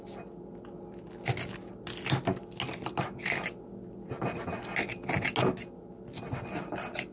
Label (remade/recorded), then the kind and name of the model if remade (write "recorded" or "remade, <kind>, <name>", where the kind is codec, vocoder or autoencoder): recorded